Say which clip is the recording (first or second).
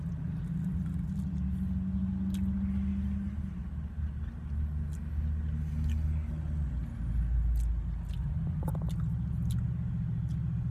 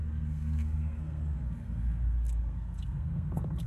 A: first